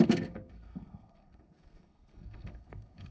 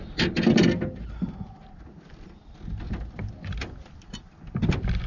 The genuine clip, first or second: second